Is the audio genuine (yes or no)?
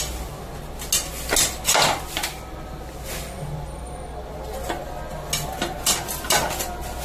yes